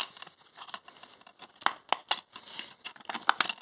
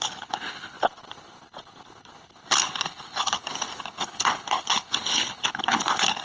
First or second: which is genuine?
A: first